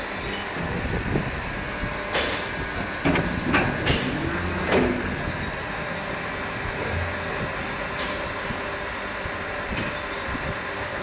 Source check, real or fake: real